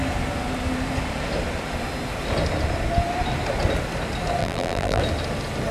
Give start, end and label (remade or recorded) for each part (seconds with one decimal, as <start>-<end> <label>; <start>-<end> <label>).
0.0-4.4 recorded; 4.4-5.0 remade; 5.0-5.7 recorded